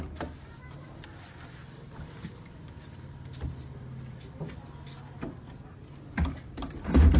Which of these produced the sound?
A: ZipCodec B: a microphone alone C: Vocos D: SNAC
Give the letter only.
B